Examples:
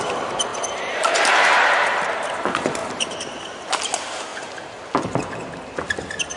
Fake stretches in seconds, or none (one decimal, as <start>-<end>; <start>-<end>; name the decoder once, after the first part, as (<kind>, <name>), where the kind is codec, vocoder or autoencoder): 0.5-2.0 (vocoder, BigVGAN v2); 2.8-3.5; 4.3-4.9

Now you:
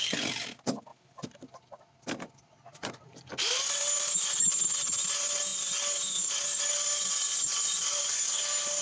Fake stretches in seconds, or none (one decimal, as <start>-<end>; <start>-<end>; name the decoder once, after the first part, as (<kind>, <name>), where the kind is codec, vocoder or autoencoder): 0.9-4.7 (vocoder, BigVGAN v2); 7.3-8.0

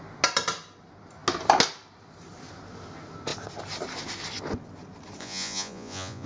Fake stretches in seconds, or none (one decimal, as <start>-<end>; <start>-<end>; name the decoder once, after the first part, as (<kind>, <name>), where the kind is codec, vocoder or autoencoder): 5.2-6.3 (vocoder, Vocos)